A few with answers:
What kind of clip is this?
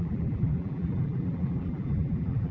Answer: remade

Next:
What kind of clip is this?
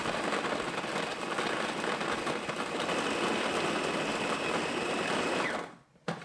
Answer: recorded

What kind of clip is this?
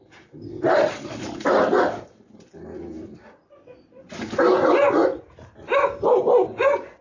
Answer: recorded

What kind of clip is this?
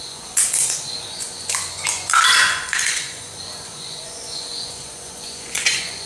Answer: remade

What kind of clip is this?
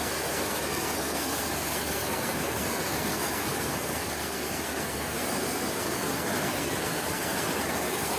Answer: remade